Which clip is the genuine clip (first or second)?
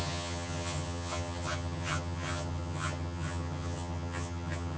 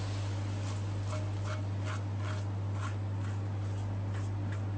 second